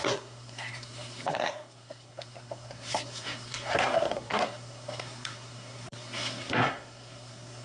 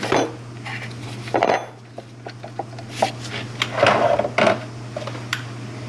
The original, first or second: second